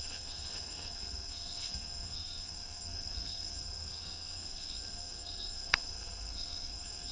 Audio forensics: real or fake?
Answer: fake